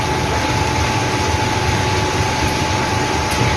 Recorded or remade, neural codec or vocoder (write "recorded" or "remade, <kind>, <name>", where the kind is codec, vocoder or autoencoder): recorded